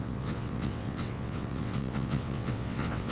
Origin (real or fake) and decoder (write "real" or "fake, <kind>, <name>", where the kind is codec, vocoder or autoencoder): fake, vocoder, WaveNeXt